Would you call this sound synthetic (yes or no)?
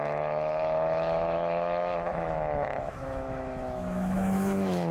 yes